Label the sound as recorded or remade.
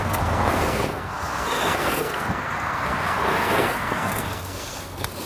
remade